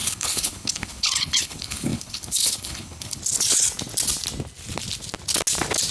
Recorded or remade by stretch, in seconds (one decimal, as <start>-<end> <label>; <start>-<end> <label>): 0.0-3.2 remade; 3.2-5.9 recorded